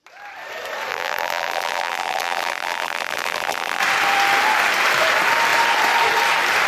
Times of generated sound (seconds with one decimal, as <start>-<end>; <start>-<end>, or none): 0.9-3.8